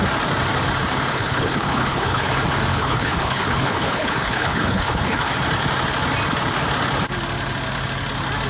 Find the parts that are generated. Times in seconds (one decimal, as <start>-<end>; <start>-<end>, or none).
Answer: 1.1-2.3; 2.7-5.3